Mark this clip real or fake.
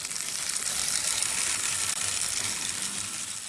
real